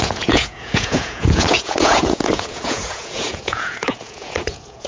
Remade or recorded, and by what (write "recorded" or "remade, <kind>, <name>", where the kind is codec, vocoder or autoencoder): remade, vocoder, Vocos